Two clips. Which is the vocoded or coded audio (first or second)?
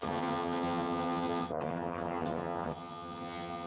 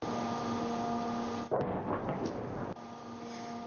first